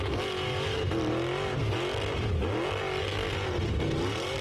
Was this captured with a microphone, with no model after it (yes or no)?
yes